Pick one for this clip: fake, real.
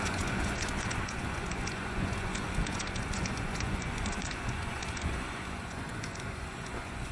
fake